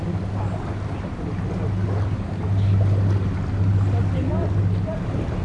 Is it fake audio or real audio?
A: real